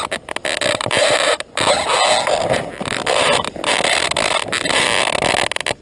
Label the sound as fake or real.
real